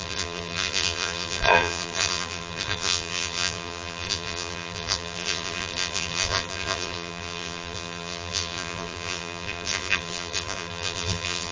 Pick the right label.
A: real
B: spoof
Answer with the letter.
B